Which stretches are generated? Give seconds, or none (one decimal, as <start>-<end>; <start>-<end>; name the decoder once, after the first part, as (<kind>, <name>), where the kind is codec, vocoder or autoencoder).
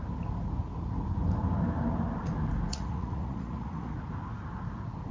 2.7-3.9 (vocoder, Vocos)